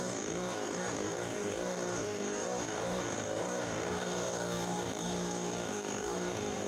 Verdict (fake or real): fake